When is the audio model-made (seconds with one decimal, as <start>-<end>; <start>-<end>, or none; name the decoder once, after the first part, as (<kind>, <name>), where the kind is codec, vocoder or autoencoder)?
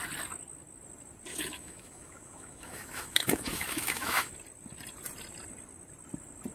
1.3-4.3 (autoencoder, DAC-VAE)